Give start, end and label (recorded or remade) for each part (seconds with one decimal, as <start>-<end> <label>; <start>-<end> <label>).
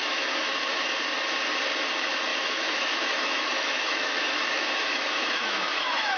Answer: 0.0-0.9 remade; 0.9-2.3 recorded; 2.3-6.2 remade